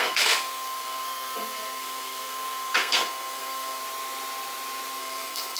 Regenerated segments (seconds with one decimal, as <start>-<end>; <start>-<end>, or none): 0.0-3.8; 5.0-5.6